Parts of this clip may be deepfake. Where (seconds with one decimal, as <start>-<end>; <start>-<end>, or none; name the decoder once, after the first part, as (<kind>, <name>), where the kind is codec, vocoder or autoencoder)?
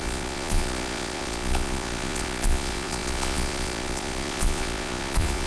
0.0-5.5 (vocoder, Vocos)